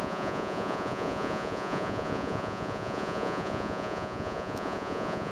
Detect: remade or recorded remade